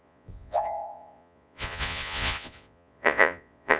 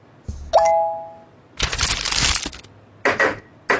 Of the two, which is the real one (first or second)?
second